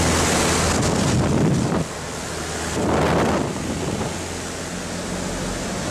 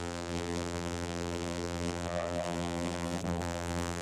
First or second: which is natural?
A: first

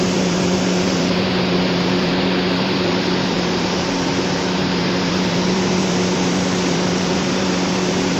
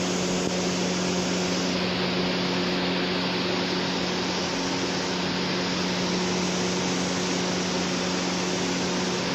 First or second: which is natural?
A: second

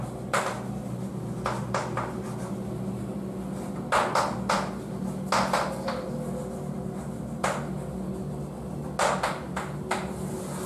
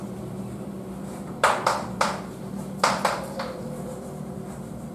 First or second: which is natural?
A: first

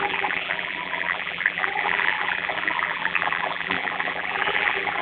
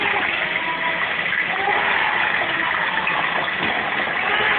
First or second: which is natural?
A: second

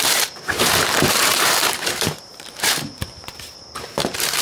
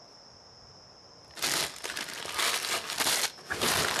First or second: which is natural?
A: second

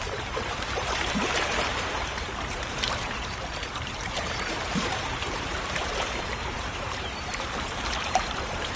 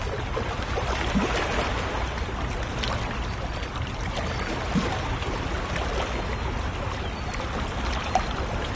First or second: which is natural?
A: second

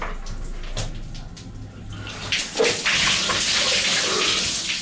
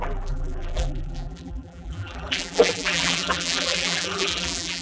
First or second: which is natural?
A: first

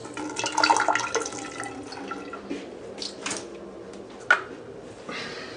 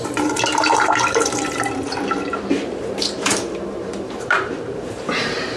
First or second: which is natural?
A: first